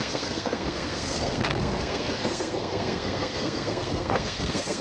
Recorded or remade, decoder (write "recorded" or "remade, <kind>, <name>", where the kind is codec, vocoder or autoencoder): remade, codec, SNAC